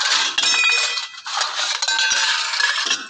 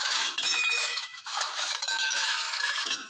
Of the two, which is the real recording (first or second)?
first